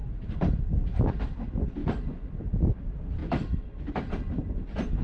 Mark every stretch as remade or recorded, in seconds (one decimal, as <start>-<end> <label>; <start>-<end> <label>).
0.0-1.8 recorded; 1.8-2.3 remade; 2.3-5.0 recorded